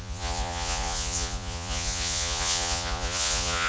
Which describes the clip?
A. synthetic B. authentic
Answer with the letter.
A